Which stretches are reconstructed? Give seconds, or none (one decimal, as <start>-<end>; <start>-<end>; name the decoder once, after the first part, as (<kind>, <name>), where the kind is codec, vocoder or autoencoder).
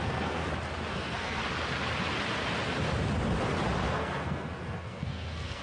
0.0-0.4 (codec, SNAC); 0.9-1.4; 3.9-5.6